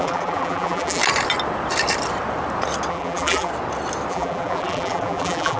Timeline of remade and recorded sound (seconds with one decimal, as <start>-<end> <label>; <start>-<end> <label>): 0.0-1.0 remade; 1.0-2.9 recorded; 2.9-3.5 remade; 3.5-4.1 recorded; 4.1-5.6 remade